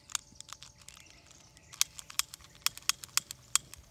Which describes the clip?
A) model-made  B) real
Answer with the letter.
B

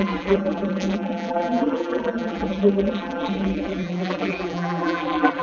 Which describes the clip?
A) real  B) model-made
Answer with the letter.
B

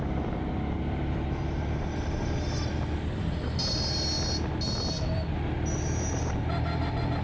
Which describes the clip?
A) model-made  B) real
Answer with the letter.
B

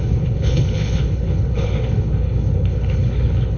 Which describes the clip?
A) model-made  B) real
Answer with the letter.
A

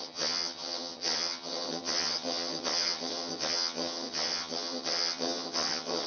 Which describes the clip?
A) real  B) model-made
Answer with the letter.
B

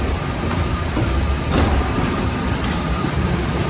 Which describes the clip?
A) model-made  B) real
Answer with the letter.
A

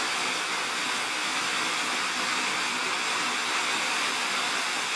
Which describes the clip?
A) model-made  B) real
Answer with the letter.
B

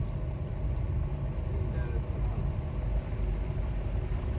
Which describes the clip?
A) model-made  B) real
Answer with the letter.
B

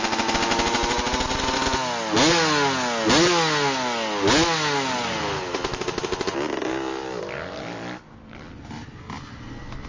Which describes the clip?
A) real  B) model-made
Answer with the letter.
A